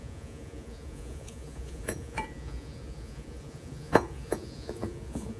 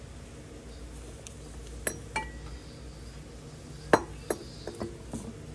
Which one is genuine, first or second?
second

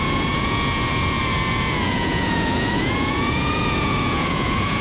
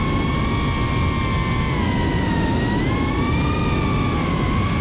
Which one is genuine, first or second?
second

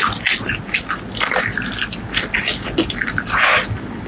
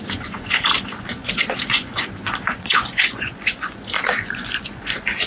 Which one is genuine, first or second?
first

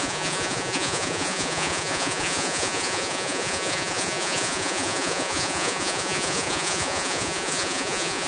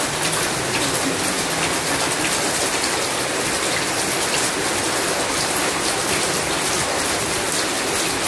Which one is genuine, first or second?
second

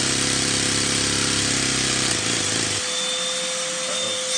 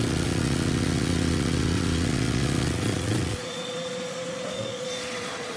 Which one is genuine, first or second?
first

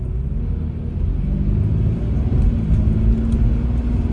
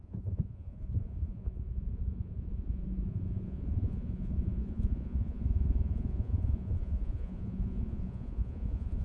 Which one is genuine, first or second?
first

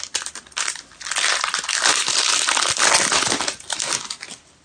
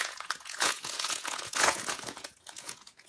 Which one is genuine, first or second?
first